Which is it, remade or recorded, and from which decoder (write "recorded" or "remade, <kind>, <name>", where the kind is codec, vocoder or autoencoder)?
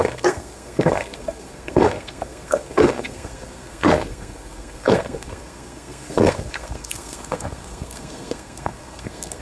remade, codec, SNAC